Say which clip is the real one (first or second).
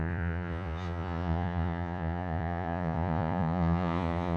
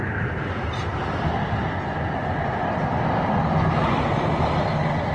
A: second